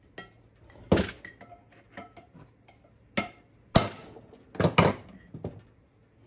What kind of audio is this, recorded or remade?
recorded